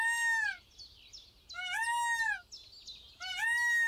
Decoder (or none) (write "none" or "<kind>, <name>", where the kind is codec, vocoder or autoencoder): none